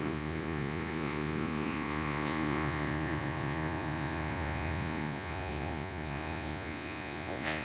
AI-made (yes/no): yes